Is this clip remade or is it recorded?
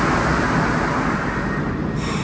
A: recorded